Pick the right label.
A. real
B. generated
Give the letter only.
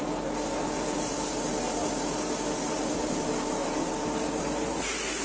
A